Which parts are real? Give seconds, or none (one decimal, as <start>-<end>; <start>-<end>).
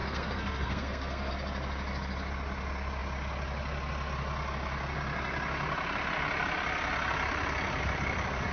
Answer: 1.3-8.5